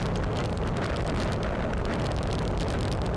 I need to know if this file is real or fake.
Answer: fake